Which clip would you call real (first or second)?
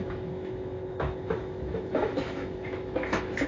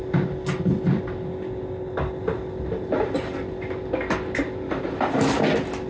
second